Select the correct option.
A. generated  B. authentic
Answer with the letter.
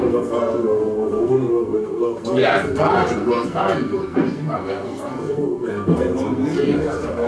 A